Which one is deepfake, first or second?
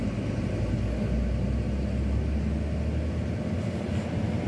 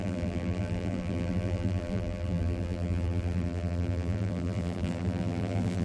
second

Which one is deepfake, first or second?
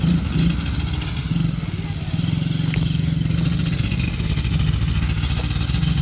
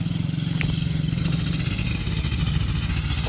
second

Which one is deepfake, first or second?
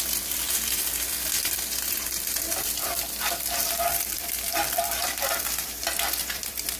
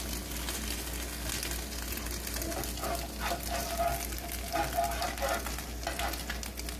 first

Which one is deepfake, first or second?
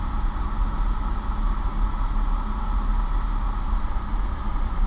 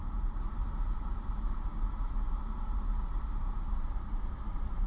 second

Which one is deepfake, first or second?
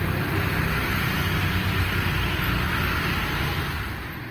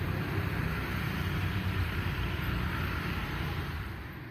second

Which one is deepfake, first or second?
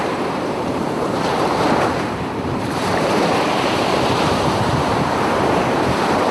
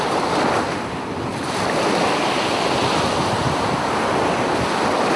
first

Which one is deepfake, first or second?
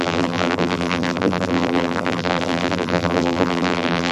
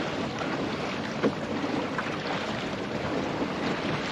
first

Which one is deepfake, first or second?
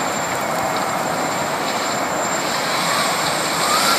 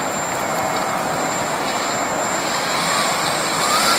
first